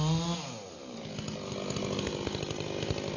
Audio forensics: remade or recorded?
recorded